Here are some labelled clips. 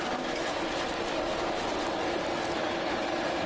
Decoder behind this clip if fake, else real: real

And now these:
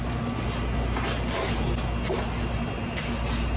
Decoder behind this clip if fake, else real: real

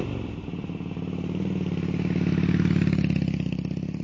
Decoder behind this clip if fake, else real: real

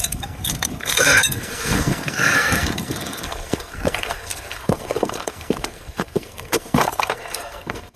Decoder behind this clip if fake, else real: fake, codec, SNAC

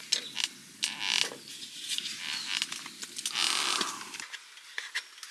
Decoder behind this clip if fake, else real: real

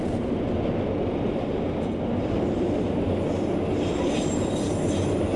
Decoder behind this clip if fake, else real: real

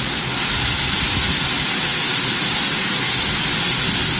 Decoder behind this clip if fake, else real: real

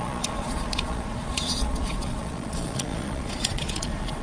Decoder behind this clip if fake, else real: fake, vocoder, Vocos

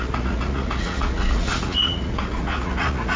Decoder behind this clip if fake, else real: fake, vocoder, Vocos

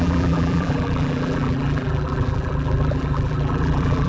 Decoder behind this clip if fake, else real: fake, vocoder, BigVGAN v2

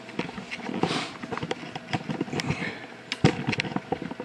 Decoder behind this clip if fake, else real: real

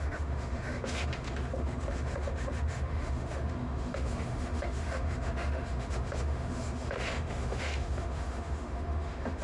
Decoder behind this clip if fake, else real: fake, autoencoder, DAC-VAE